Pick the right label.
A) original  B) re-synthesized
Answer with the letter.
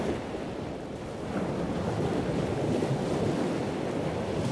A